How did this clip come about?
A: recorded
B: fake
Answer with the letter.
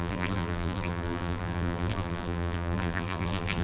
B